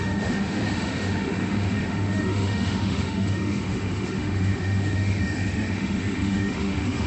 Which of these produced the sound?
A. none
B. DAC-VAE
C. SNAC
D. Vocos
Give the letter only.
B